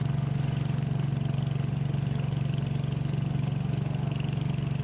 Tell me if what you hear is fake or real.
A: real